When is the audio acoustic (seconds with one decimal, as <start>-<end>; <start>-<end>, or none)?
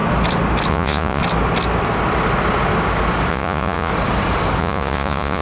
0.0-0.7; 1.2-3.3; 3.9-4.6